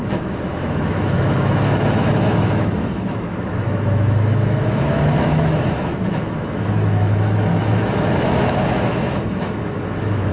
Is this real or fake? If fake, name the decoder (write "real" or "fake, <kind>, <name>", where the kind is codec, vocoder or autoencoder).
fake, autoencoder, DAC-VAE